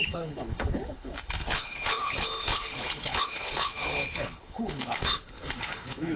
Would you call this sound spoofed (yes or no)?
yes